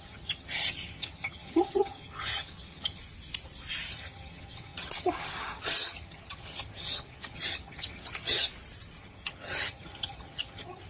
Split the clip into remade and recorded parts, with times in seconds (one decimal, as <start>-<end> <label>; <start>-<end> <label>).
0.0-3.0 remade; 3.0-3.9 recorded; 3.9-8.5 remade; 8.5-9.0 recorded; 9.0-10.9 remade